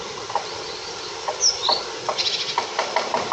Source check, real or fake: real